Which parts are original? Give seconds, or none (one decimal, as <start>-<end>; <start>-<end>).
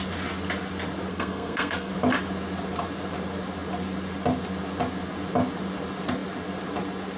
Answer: 0.0-1.1; 1.9-7.2